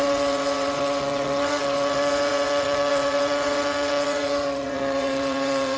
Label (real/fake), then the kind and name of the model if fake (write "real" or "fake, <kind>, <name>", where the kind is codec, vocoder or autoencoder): fake, vocoder, WaveNeXt